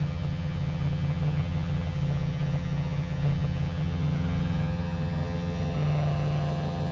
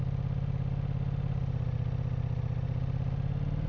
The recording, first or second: second